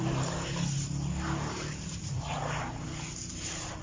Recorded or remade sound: recorded